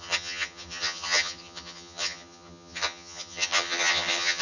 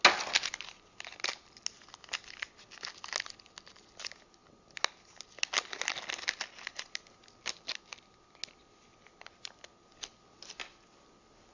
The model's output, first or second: first